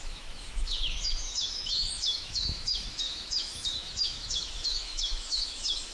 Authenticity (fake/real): fake